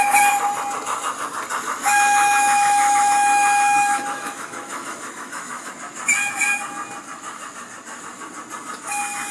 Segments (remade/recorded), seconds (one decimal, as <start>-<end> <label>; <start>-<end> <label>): 0.0-1.8 recorded; 1.8-5.7 remade; 5.7-9.3 recorded